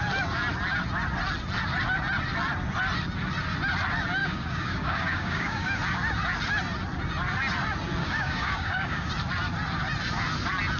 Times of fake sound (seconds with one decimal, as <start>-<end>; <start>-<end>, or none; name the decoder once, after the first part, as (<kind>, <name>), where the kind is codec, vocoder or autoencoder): 4.2-5.8 (codec, DAC); 8.0-9.1

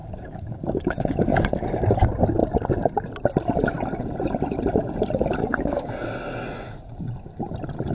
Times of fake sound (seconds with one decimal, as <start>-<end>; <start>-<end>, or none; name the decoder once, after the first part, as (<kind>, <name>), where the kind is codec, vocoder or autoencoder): 0.0-1.9 (codec, DAC); 5.4-5.9

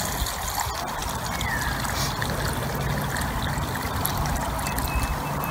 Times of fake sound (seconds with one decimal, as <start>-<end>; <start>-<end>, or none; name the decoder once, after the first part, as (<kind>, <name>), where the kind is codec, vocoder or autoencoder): none

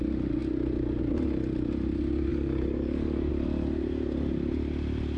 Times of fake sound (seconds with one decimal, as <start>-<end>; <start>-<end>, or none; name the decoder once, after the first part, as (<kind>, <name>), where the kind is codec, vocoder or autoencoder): 2.3-3.3 (codec, DAC)